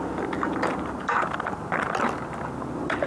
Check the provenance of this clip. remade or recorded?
recorded